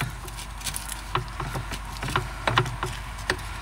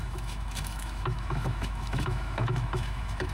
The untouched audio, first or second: first